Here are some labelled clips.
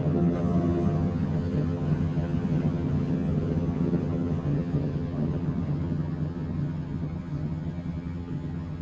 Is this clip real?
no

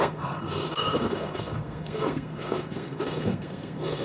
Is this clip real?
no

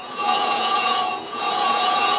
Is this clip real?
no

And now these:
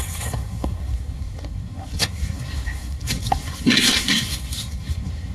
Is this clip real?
no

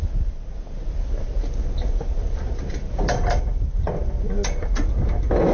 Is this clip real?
yes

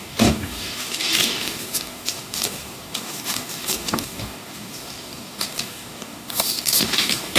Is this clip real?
no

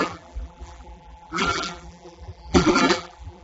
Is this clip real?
no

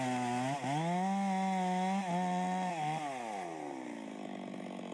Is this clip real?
yes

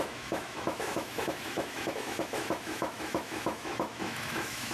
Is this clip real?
no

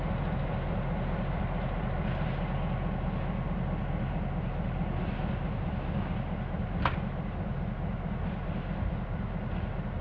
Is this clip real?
yes